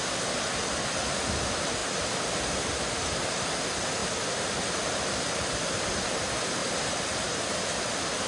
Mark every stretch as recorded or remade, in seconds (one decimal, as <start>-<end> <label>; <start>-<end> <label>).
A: 0.0-6.6 recorded; 6.6-7.4 remade; 7.4-8.3 recorded